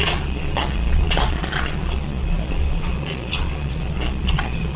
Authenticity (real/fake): fake